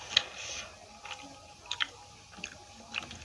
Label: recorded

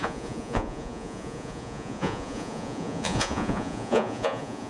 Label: remade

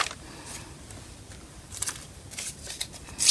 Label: remade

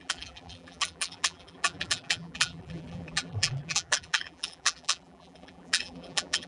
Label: remade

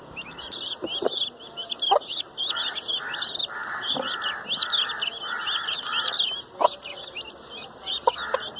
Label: recorded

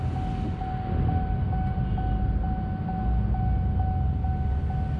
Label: recorded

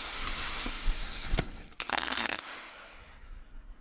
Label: remade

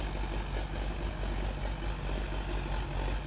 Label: recorded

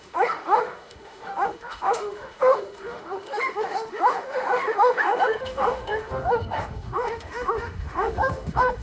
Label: remade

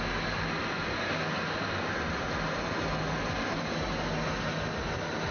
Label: recorded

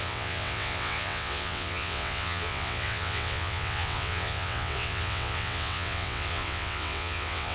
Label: remade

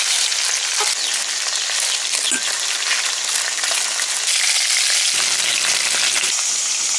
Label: recorded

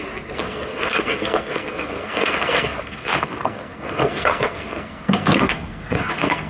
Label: remade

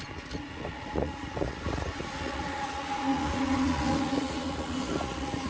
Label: remade